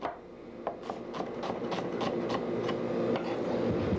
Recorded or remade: recorded